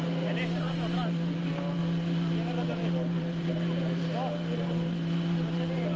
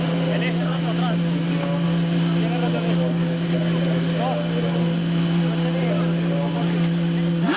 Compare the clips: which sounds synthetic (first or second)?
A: first